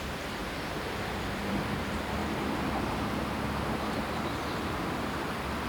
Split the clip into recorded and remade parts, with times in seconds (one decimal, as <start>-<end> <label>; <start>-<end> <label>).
0.0-0.4 remade; 0.4-1.1 recorded; 1.1-2.2 remade; 2.2-3.7 recorded; 3.7-5.7 remade